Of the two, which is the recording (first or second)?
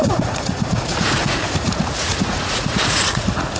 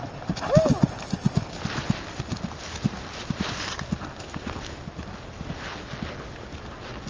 second